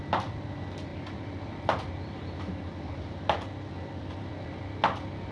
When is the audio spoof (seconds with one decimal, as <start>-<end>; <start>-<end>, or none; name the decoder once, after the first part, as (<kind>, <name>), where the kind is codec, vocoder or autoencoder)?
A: none